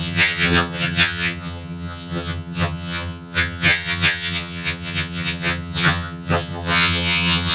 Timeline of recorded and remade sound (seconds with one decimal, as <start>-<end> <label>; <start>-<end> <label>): 0.0-7.5 remade